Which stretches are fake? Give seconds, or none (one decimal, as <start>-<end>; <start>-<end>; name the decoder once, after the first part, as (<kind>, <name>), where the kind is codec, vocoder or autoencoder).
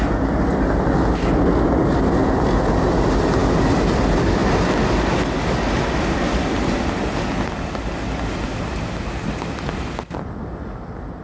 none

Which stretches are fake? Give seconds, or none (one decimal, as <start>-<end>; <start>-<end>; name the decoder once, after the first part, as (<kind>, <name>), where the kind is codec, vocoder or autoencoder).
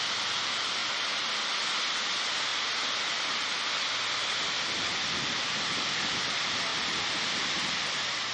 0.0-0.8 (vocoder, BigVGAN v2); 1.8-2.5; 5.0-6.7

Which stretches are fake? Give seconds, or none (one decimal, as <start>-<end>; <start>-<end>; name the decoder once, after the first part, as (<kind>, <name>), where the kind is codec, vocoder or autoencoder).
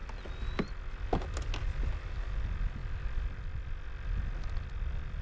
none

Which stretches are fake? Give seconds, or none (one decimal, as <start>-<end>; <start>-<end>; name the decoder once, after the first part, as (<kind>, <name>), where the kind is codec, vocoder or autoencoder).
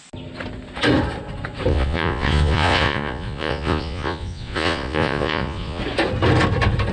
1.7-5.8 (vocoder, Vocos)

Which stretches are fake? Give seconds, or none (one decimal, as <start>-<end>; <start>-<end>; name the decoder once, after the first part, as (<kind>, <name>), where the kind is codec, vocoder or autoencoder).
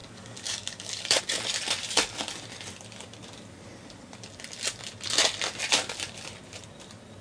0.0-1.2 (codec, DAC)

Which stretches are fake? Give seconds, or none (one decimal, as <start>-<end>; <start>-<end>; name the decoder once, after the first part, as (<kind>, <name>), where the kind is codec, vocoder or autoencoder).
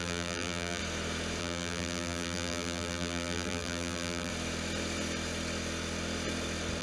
0.0-0.8 (vocoder, BigVGAN v2); 1.4-4.3